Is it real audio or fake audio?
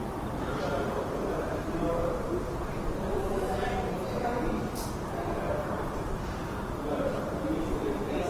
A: fake